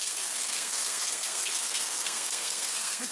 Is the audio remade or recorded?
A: remade